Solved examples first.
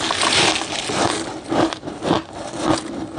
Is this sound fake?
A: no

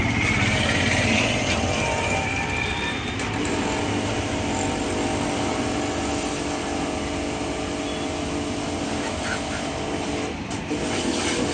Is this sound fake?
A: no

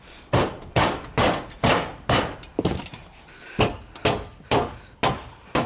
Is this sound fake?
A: no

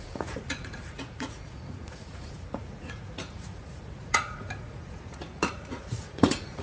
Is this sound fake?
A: yes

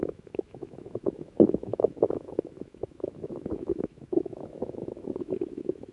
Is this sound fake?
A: yes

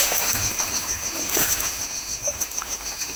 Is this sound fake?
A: yes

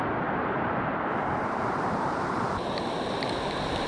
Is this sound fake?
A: yes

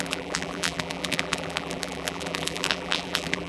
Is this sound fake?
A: yes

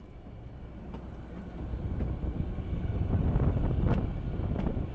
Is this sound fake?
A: no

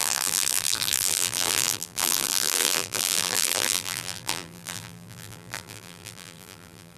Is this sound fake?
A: yes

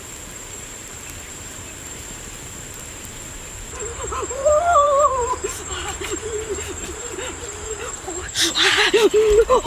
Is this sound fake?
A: yes